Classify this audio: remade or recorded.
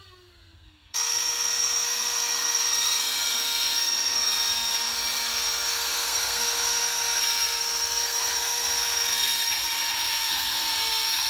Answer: remade